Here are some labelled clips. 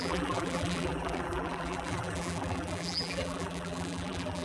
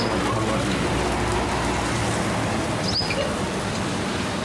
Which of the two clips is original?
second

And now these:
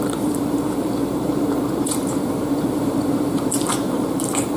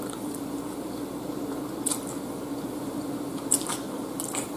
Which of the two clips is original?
second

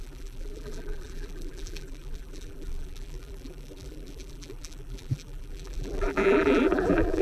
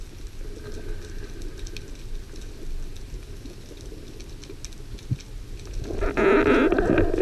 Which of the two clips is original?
second